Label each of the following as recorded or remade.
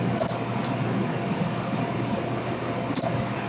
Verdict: remade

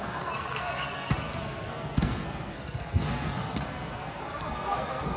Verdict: remade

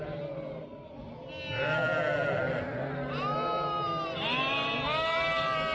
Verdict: recorded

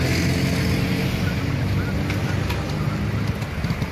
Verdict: recorded